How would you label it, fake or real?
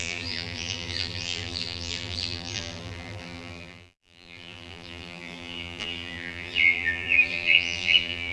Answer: fake